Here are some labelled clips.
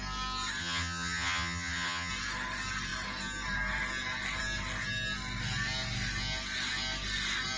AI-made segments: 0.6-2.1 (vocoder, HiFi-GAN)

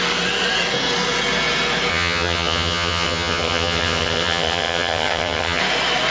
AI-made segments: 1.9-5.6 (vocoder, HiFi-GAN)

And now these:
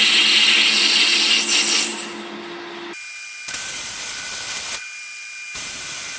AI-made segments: none

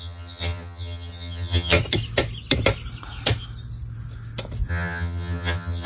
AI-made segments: 0.0-1.8 (vocoder, HiFi-GAN); 4.7-5.9